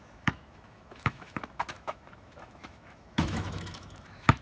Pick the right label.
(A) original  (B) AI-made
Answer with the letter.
B